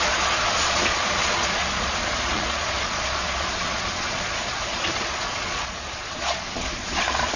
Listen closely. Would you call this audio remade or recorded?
remade